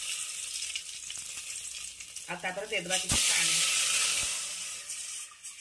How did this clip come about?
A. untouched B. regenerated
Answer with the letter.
A